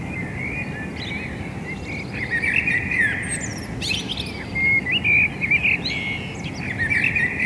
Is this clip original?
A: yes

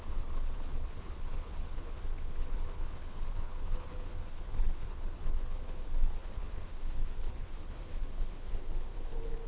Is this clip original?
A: no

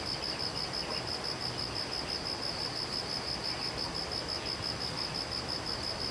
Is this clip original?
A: yes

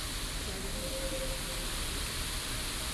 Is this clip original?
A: yes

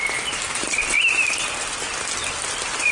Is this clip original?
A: yes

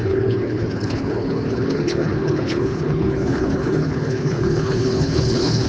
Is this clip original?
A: no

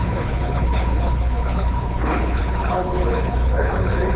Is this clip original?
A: no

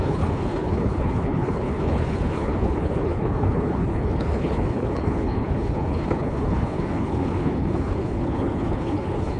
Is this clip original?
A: no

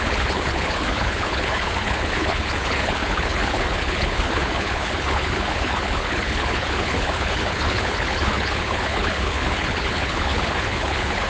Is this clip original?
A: no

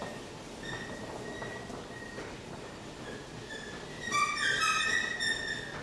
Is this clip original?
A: yes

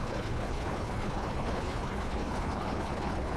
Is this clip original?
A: no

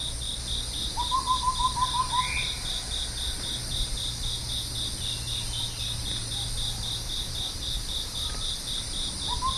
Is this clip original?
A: yes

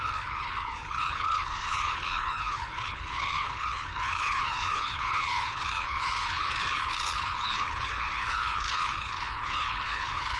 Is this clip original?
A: no